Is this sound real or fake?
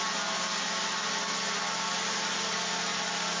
real